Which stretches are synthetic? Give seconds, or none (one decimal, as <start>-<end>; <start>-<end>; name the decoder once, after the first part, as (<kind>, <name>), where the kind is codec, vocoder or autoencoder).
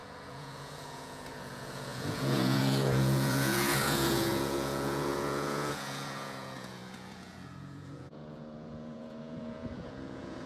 0.0-10.5 (vocoder, Vocos)